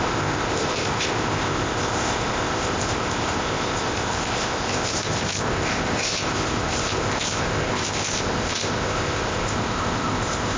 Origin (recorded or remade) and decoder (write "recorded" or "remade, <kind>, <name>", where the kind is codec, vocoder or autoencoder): remade, codec, ZipCodec